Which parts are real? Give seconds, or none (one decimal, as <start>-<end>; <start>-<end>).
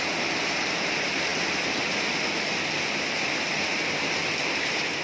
0.0-5.0